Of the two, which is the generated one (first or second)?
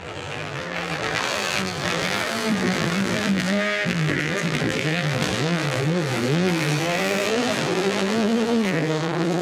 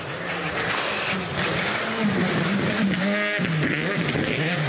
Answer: first